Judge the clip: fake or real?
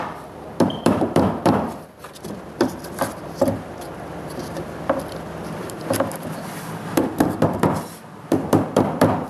fake